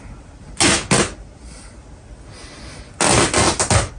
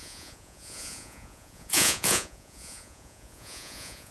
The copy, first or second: second